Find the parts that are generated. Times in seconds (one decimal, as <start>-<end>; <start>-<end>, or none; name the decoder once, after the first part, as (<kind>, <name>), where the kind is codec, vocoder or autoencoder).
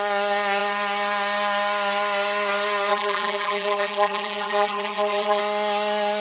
2.9-5.4 (vocoder, BigVGAN v2)